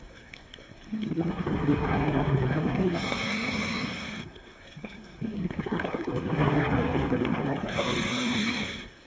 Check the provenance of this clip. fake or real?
fake